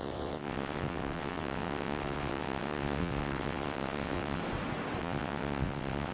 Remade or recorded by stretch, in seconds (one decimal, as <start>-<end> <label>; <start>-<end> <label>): 0.0-4.4 remade; 4.4-5.0 recorded; 5.0-6.1 remade